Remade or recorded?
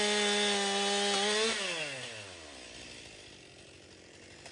recorded